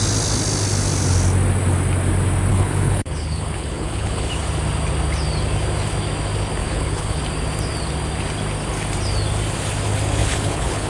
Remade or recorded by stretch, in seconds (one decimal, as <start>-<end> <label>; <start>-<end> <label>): 0.0-2.5 recorded; 2.5-4.3 remade; 4.3-6.6 recorded; 6.6-7.2 remade; 7.2-10.2 recorded; 10.2-10.9 remade